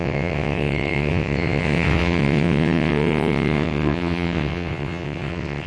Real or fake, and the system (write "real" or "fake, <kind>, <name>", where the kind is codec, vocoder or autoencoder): fake, vocoder, WaveNeXt